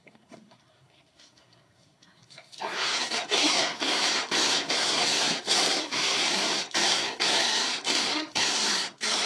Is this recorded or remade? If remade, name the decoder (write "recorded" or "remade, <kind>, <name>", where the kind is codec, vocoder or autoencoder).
remade, codec, SNAC